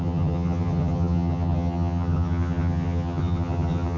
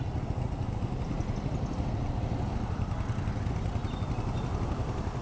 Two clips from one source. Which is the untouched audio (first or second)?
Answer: second